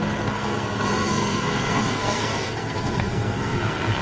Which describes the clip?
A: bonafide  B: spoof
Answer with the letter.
B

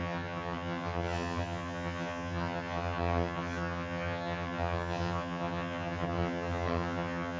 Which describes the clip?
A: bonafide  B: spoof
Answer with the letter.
B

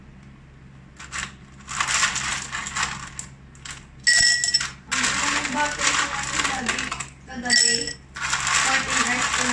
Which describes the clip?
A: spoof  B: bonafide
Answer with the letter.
B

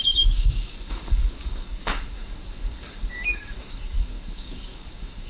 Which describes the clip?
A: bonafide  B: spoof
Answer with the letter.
B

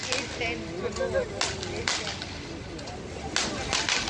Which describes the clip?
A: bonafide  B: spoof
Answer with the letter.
A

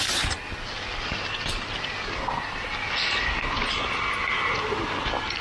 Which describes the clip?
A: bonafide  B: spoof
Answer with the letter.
A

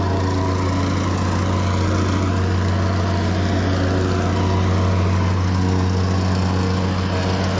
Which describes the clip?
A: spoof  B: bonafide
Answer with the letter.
B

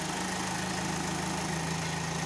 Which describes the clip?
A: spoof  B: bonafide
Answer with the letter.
B